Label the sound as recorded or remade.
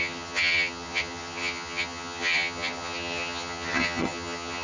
remade